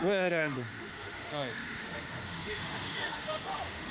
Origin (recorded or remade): remade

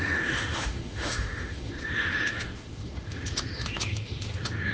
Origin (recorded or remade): remade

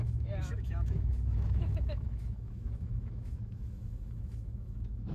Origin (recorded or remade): remade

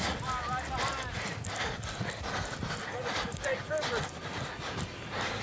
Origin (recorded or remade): recorded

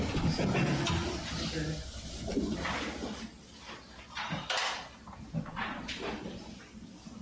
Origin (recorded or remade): recorded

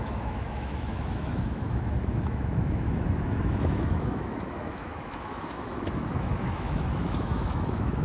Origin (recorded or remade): remade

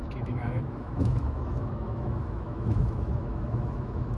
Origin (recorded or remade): remade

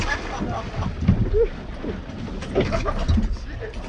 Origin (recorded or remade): recorded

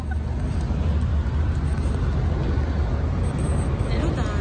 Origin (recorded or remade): recorded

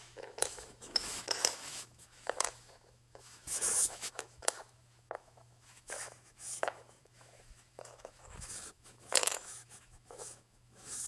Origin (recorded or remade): remade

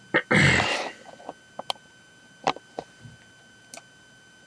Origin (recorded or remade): recorded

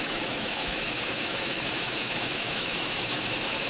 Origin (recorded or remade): remade